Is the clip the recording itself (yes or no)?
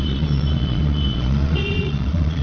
no